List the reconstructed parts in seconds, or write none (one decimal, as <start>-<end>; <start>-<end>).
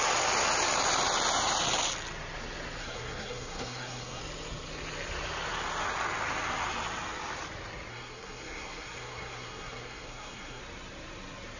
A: 2.8-4.2; 7.9-10.6